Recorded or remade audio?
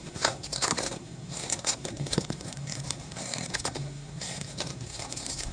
remade